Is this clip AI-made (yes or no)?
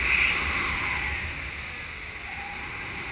no